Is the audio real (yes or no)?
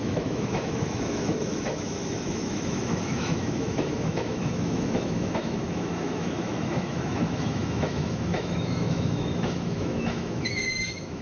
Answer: no